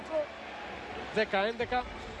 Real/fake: real